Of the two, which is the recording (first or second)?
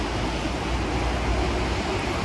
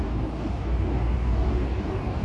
first